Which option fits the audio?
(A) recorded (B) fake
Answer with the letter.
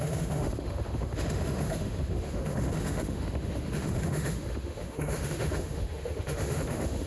B